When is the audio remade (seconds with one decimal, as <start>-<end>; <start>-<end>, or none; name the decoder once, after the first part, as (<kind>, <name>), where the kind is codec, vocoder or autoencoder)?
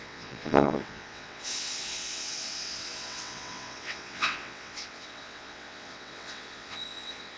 0.0-7.4 (vocoder, WaveNeXt)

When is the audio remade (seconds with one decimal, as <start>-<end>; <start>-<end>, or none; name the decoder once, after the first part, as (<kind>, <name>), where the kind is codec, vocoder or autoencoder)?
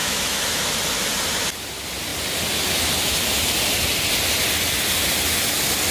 0.0-0.7 (autoencoder, DAC-VAE)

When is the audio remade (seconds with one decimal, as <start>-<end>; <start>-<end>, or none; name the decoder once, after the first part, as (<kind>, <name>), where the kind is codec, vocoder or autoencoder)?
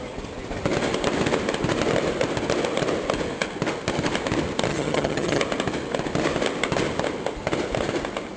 4.7-5.4 (vocoder, HiFi-GAN)